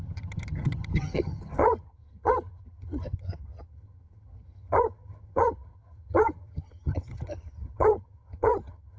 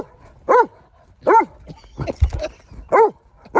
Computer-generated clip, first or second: first